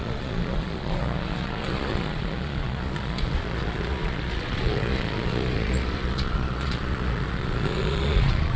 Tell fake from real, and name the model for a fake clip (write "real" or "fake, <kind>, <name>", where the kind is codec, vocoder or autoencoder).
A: fake, vocoder, Vocos